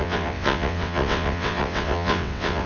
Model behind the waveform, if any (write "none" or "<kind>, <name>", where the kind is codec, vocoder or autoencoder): vocoder, WaveNeXt